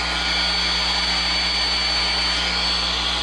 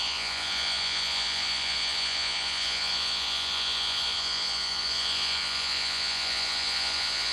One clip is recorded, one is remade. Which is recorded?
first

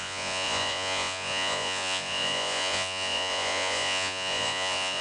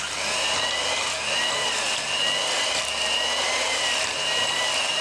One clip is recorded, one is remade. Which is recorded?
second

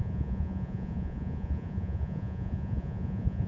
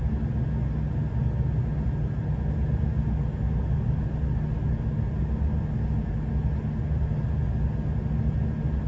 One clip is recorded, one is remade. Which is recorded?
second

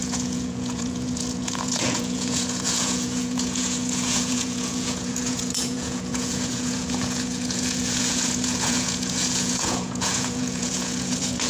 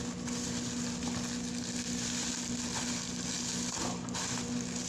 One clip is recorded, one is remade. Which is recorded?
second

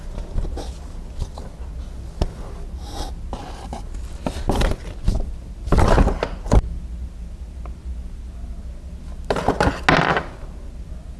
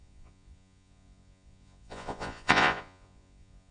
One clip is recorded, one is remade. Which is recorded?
first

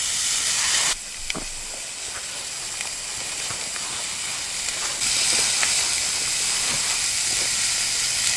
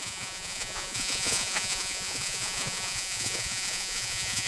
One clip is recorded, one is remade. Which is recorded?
first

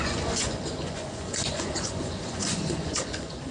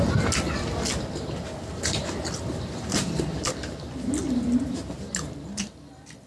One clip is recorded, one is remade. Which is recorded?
second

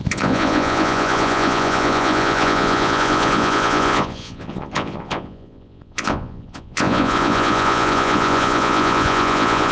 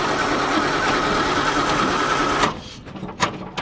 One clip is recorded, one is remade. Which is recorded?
second